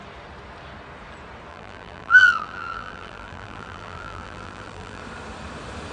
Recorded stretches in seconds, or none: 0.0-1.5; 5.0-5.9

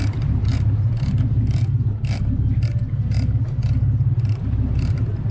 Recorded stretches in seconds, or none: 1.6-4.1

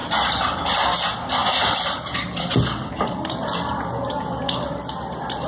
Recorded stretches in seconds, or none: 0.6-1.4; 2.9-5.5

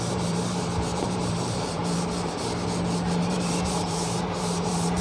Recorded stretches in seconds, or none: 1.8-3.3

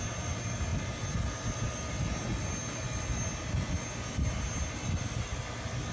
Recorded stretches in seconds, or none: 0.0-5.9

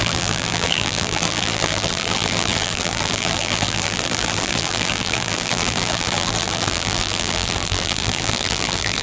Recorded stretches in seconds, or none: none

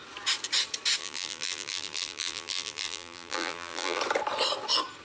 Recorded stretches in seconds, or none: 0.0-1.0; 4.0-5.0